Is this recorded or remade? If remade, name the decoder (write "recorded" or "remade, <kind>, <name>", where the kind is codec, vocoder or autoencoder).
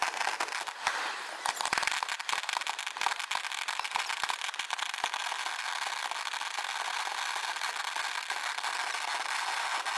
recorded